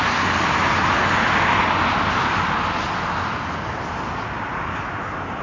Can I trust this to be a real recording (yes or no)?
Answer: yes